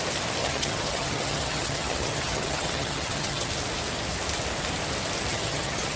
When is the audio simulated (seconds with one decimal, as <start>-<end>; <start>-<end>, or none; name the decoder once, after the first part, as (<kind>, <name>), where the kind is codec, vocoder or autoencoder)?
0.4-3.5 (vocoder, HiFi-GAN); 5.3-6.0